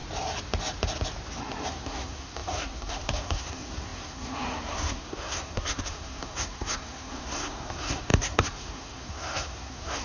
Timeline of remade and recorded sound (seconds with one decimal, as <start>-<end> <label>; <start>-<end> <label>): 0.0-1.7 recorded; 1.7-10.0 remade